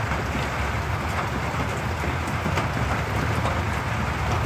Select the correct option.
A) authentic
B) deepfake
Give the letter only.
A